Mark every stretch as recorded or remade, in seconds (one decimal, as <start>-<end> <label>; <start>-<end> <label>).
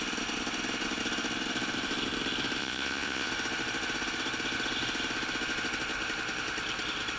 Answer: 0.0-2.6 recorded; 2.6-3.3 remade; 3.3-7.2 recorded